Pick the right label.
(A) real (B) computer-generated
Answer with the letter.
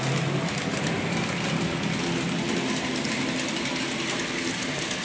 A